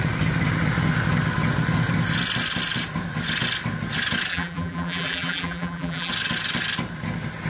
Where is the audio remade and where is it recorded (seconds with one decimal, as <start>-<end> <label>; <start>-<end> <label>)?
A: 0.0-4.3 recorded; 4.3-6.1 remade; 6.1-7.5 recorded